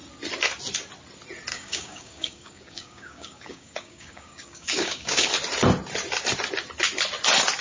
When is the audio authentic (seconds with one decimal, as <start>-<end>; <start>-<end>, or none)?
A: 0.0-1.5; 5.3-7.6

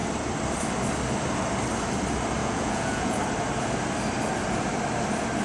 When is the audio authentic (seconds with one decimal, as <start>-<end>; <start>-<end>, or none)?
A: 0.0-2.4; 3.2-5.4

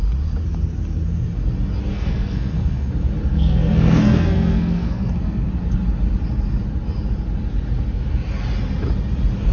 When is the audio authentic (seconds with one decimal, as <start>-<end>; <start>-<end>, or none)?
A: 0.0-1.9; 2.9-3.3; 5.5-9.5